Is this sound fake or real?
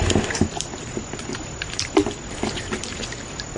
real